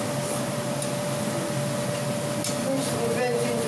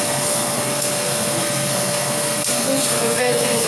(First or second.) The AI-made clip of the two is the second